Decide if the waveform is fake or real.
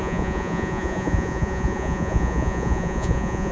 fake